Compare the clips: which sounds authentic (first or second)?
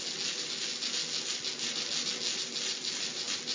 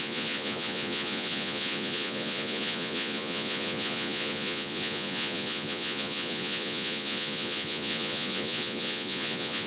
first